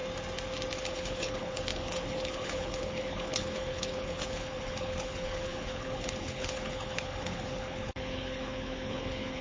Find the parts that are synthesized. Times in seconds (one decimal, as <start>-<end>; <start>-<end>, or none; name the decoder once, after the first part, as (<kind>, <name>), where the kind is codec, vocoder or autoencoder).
0.8-9.4 (codec, HILCodec)